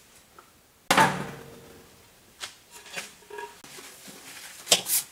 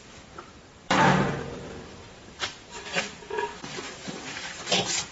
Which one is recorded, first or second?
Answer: first